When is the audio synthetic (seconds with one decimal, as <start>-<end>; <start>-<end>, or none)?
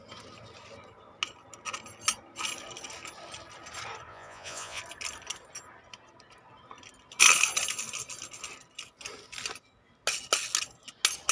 4.1-4.8